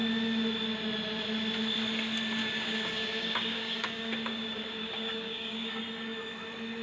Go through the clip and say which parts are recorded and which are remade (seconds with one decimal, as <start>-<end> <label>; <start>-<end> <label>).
0.0-2.4 recorded; 2.4-5.8 remade; 5.8-6.8 recorded

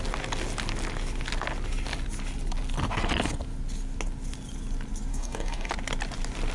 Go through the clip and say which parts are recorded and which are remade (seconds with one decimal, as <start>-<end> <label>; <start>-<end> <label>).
0.0-5.1 recorded; 5.1-5.7 remade; 5.7-6.5 recorded

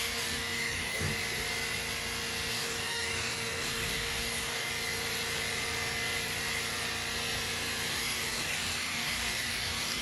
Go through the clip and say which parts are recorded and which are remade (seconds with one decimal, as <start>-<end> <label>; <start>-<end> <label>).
0.0-1.1 remade; 1.1-2.5 recorded; 2.5-4.7 remade; 4.7-7.9 recorded; 7.9-10.0 remade